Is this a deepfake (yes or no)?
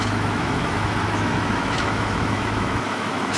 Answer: yes